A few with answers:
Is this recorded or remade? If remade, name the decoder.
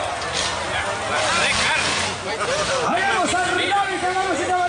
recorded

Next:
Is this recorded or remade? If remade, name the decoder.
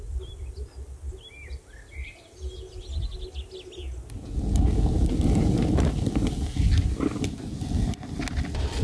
recorded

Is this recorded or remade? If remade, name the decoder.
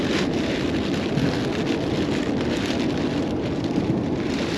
recorded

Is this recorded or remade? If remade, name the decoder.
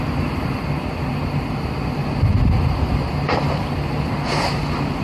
remade, vocoder, BigVGAN v2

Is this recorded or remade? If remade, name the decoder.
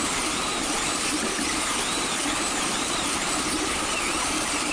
remade, vocoder, BigVGAN v2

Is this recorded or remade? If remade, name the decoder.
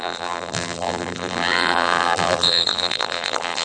remade, vocoder, BigVGAN v2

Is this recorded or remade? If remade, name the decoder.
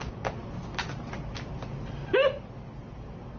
recorded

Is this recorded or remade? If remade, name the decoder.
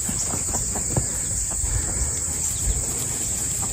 recorded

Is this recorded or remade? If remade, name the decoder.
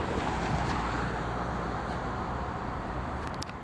remade, vocoder, BigVGAN v2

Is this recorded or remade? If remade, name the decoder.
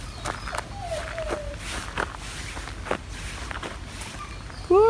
recorded